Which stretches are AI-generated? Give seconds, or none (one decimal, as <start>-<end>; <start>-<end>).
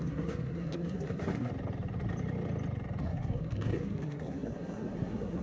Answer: 0.0-1.5; 3.0-5.4